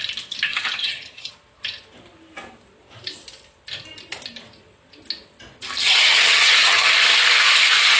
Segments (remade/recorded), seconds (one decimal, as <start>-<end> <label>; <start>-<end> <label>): 0.0-0.5 recorded; 0.5-1.3 remade; 1.3-5.8 recorded; 5.8-6.9 remade; 6.9-8.0 recorded